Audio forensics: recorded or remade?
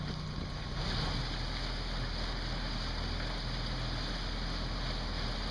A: recorded